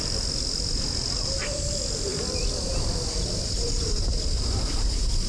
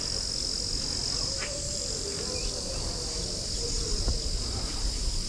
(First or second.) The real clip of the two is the second